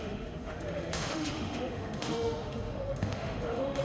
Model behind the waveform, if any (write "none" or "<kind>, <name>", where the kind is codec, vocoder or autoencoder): autoencoder, DAC-VAE